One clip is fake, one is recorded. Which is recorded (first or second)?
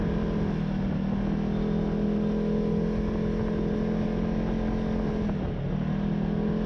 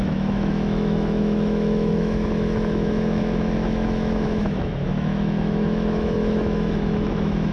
first